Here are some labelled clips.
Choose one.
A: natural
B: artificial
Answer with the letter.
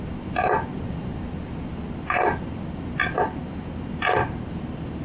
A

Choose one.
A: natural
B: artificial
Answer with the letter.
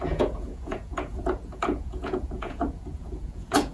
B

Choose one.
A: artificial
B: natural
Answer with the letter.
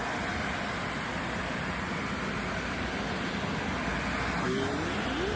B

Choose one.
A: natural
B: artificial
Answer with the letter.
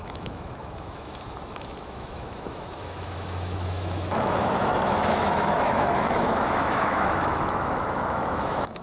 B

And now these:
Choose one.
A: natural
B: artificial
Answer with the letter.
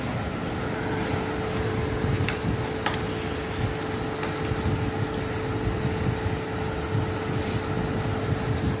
A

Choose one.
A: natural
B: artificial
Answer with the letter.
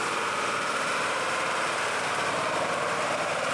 B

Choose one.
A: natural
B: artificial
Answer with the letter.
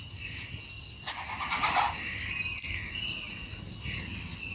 A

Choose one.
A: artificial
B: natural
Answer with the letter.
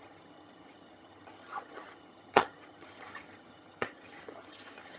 A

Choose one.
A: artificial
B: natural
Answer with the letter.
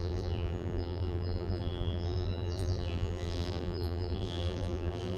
A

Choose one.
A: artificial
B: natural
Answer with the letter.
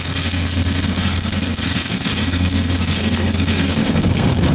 A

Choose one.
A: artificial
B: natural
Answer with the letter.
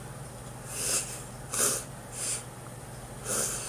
B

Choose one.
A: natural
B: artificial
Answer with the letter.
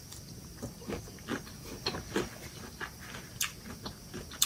A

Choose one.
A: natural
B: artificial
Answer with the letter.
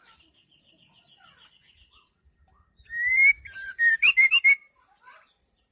B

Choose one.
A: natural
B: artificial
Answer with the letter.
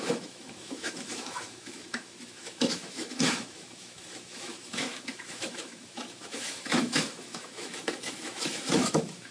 B